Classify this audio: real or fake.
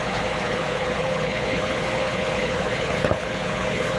fake